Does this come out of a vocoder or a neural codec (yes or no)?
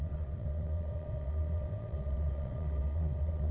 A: yes